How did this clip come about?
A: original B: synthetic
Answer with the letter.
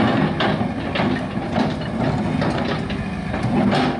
A